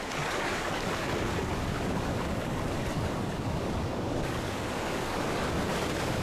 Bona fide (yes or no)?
no